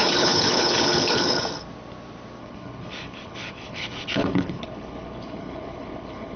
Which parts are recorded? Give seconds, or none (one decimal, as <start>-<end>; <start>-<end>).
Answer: 1.4-2.4